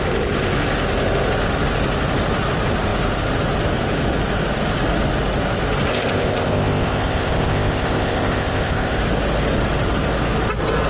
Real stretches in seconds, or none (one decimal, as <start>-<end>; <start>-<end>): 0.0-5.9; 9.0-10.9